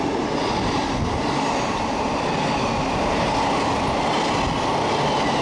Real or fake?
real